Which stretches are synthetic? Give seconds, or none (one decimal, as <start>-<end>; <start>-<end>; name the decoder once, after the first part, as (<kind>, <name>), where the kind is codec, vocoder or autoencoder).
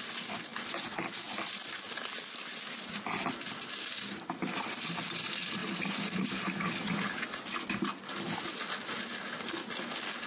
none